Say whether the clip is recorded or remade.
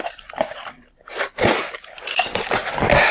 remade